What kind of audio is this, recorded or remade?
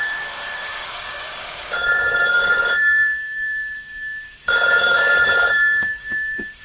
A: remade